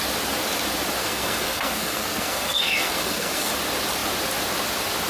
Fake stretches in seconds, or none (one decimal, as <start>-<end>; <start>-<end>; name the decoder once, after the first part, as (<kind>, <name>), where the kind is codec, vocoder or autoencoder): 1.0-3.5 (codec, SNAC)

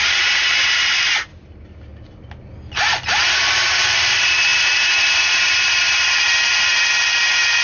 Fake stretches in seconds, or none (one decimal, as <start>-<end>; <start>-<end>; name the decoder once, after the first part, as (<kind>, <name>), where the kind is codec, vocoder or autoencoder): 0.0-1.3 (vocoder, BigVGAN v2); 4.1-7.6

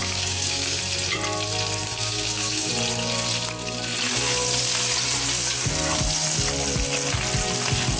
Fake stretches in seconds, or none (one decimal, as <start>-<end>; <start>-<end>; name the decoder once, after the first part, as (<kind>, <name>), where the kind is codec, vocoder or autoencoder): 0.0-0.8 (codec, DAC); 1.8-2.7